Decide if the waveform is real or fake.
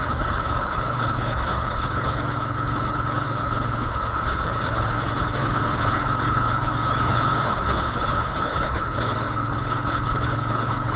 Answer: fake